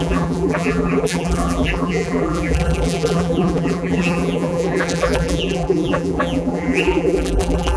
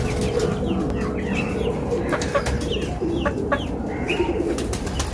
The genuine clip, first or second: second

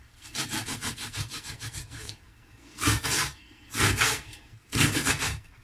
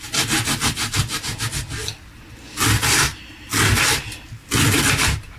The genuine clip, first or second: second